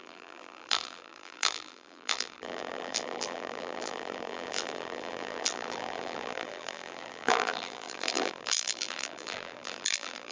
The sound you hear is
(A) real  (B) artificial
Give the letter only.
B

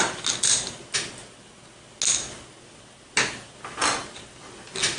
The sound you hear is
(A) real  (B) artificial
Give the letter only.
A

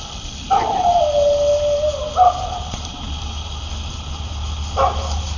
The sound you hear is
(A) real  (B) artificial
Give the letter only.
A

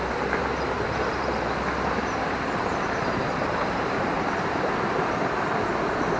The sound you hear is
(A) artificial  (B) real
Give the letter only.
B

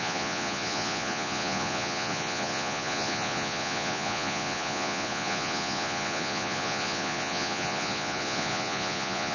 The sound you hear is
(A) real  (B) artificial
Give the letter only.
B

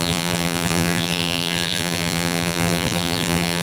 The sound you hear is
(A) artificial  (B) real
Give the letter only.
A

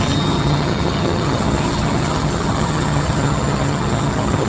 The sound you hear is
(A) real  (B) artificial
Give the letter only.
B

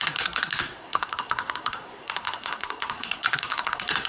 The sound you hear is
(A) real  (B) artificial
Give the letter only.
B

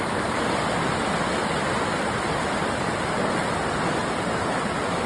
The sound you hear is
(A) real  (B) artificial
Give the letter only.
A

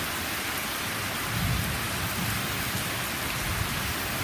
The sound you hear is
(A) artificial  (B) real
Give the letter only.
B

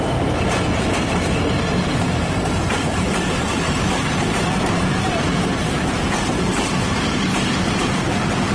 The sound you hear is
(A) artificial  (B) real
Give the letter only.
A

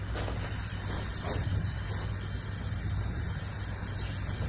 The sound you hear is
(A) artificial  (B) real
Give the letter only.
B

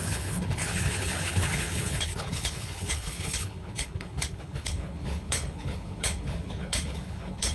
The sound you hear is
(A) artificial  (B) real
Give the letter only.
A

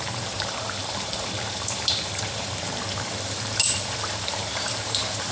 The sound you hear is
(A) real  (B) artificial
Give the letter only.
B